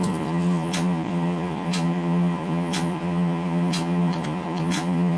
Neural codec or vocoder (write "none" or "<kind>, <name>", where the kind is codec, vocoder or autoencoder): vocoder, Vocos